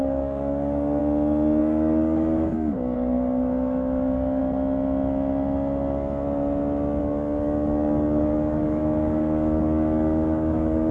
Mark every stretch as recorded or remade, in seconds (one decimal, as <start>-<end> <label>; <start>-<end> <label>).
0.0-1.0 remade; 1.0-1.6 recorded; 1.6-4.4 remade; 4.4-7.0 recorded; 7.0-10.9 remade